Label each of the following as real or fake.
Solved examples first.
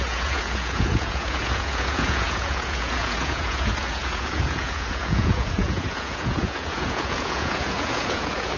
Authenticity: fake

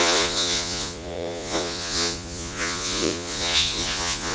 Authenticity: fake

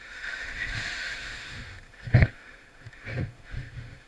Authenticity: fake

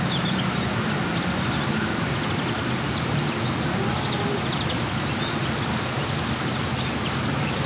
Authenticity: real